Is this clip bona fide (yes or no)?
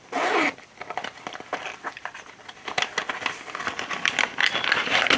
yes